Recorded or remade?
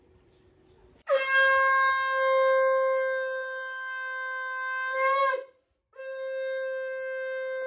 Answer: recorded